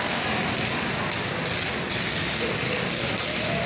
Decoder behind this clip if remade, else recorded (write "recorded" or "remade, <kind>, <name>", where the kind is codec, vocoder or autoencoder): recorded